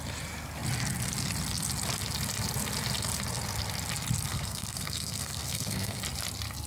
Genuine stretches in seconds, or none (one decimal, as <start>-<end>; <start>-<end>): 0.0-4.3; 6.0-6.7